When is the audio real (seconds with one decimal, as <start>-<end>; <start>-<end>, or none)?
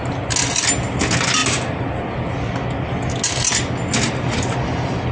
0.0-5.1